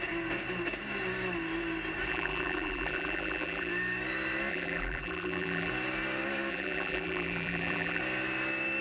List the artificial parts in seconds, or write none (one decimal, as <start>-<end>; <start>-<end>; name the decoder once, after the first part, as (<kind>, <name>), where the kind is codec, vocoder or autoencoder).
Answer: 2.1-3.7 (vocoder, BigVGAN v2); 4.5-5.7; 6.5-8.0